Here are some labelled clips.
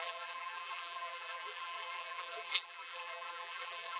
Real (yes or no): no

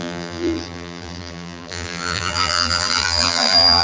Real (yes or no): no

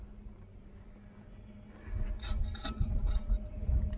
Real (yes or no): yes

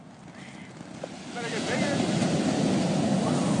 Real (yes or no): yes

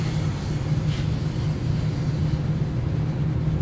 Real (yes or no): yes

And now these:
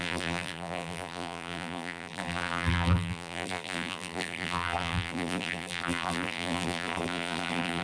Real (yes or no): no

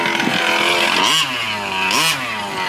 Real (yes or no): yes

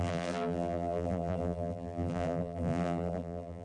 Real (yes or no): no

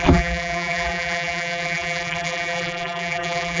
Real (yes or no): no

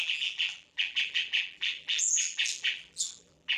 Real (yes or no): no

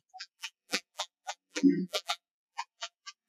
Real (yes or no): no